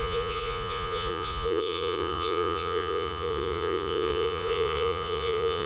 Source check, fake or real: fake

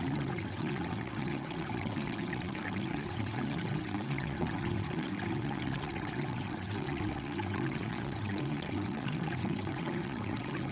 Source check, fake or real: fake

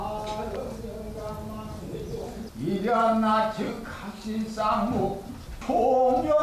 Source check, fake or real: real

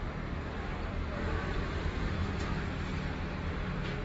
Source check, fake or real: real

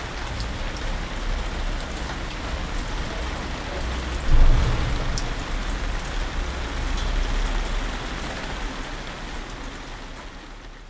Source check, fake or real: real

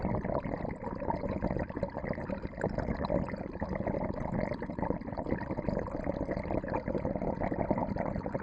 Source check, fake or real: real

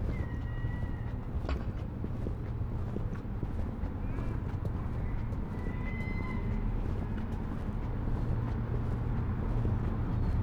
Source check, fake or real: real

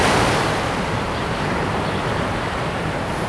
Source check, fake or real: fake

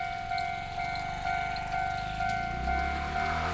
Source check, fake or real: real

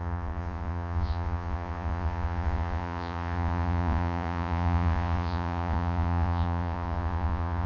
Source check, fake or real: fake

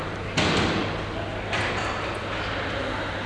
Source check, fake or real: real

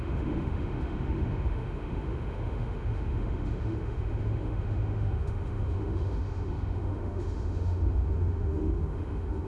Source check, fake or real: fake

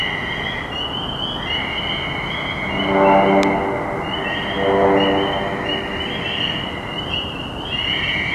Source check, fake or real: real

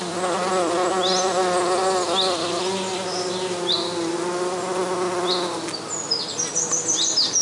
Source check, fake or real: real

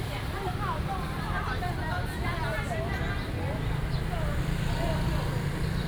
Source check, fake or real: real